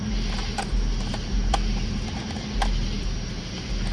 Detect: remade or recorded recorded